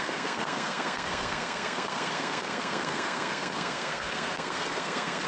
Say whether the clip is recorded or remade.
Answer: remade